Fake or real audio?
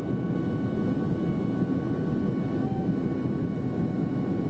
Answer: real